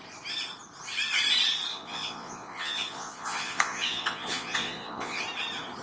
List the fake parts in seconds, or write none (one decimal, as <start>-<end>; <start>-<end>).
1.7-5.2